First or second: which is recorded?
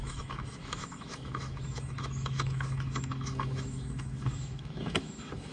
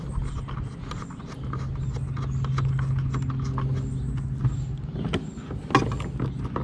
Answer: second